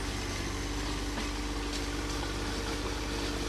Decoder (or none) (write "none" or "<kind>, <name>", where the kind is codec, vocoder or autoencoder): none